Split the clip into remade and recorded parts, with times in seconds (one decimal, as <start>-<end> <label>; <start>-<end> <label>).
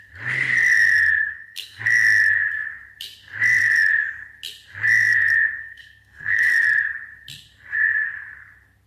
0.0-1.2 recorded; 1.2-1.8 remade; 1.8-5.6 recorded; 5.6-6.5 remade; 6.5-8.9 recorded